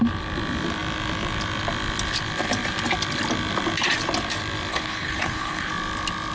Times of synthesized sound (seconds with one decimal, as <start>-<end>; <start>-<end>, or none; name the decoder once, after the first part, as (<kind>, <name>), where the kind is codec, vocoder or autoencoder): 4.7-5.7 (codec, HILCodec)